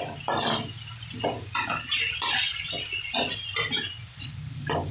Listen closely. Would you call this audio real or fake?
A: real